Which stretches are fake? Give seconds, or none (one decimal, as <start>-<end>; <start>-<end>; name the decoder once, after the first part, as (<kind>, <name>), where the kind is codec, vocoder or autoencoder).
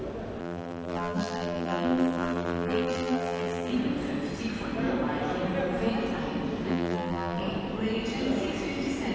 0.4-3.7 (vocoder, BigVGAN v2); 6.7-7.4